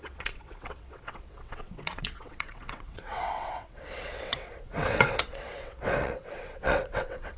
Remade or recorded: remade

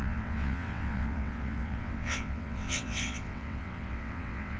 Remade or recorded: remade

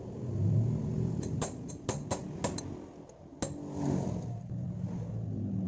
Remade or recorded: recorded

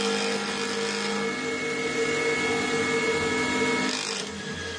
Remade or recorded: recorded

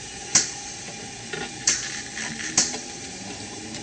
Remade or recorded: recorded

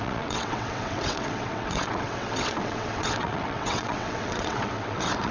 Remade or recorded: remade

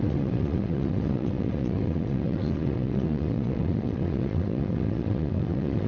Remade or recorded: remade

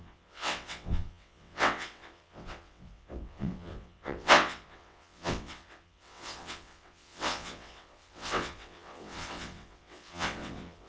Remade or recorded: remade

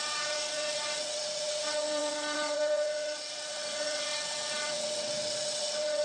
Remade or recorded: remade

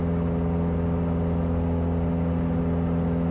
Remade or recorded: recorded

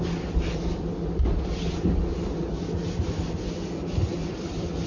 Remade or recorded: recorded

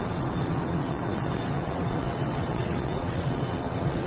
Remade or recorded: remade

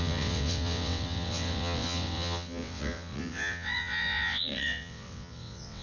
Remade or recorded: remade